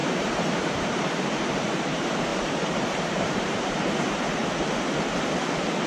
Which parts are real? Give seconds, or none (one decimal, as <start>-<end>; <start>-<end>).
4.4-5.9